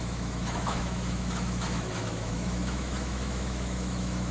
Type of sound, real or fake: fake